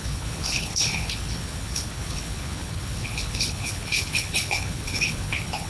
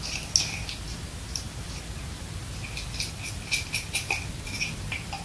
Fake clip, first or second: first